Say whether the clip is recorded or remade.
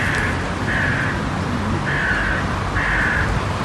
recorded